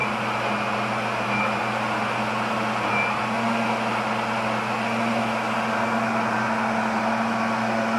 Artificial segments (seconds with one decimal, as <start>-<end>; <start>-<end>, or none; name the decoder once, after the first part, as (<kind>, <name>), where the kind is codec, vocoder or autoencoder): none